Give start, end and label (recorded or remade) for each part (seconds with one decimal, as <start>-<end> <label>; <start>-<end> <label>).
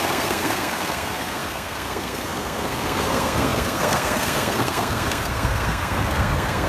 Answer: 0.0-6.7 remade